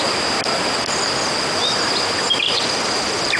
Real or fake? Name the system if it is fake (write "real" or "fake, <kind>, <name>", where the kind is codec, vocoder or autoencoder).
real